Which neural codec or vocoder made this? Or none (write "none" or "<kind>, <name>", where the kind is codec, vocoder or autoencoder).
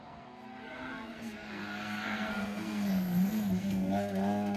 codec, SNAC